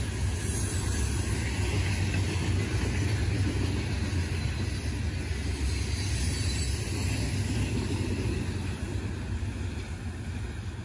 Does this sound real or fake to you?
real